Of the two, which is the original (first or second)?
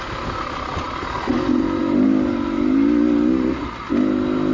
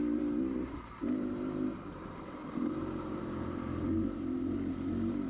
first